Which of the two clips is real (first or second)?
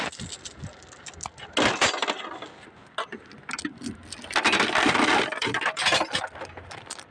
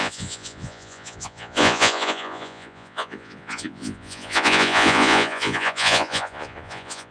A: first